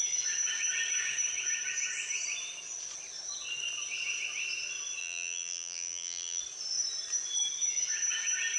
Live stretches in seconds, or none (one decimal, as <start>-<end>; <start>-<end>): 0.0-5.0; 6.4-8.6